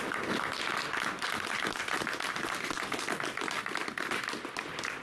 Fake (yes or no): no